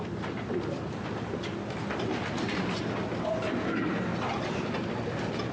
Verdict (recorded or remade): recorded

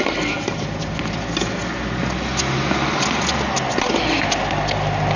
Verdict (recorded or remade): recorded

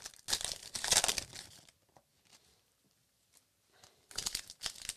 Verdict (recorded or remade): recorded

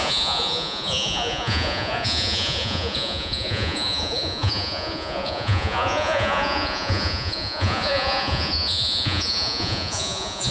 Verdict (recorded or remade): remade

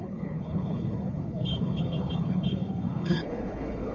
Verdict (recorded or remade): remade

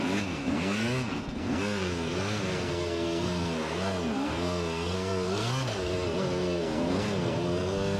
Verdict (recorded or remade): remade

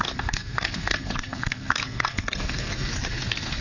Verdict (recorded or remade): remade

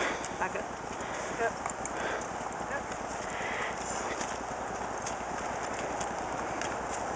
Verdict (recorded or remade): recorded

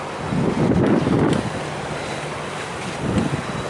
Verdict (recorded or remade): recorded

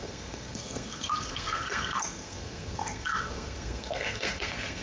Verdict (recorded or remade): remade